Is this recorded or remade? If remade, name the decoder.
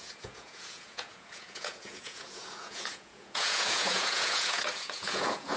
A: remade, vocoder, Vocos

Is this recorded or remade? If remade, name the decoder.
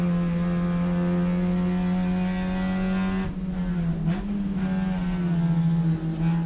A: recorded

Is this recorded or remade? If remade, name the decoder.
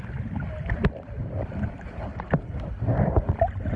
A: recorded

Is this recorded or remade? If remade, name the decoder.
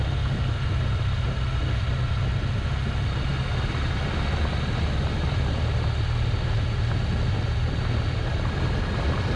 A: recorded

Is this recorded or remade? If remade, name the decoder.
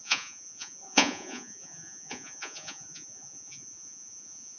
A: remade, vocoder, Vocos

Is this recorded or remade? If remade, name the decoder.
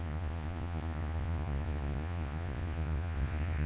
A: remade, vocoder, Vocos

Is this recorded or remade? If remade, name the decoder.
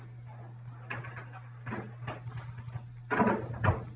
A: recorded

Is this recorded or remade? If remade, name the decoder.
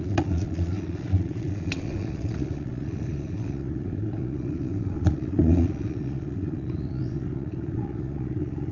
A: remade, vocoder, Vocos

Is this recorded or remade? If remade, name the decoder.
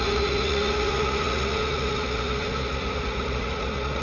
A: remade, vocoder, Vocos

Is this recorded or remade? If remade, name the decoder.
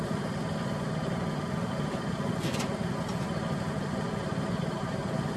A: recorded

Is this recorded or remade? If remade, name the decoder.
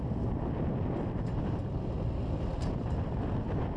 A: recorded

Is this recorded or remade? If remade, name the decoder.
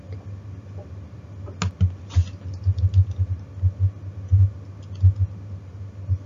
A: recorded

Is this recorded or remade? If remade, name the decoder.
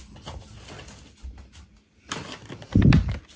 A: recorded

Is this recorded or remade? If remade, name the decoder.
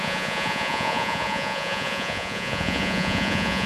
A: remade, vocoder, Vocos